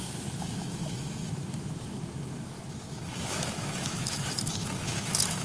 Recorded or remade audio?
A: remade